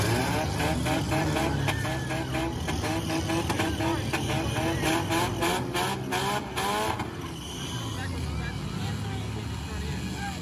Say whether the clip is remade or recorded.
recorded